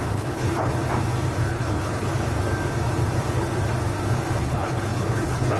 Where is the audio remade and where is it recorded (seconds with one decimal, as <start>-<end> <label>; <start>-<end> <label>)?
0.0-0.7 remade; 0.7-1.4 recorded; 1.4-2.1 remade; 2.1-4.4 recorded; 4.4-5.6 remade